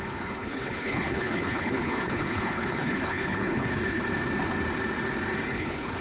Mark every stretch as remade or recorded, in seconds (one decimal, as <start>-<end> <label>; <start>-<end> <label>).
0.0-4.0 remade; 4.0-5.5 recorded; 5.5-6.0 remade